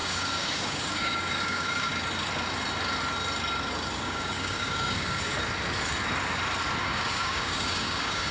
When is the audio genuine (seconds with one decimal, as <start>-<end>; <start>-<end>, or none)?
1.9-4.0; 5.3-6.8